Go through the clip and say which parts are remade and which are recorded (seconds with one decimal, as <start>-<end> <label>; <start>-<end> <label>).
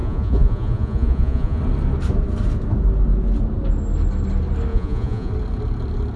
0.0-1.6 remade; 1.6-4.7 recorded; 4.7-5.3 remade; 5.3-6.2 recorded